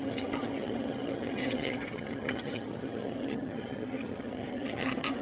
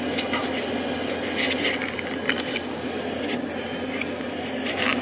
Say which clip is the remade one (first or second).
first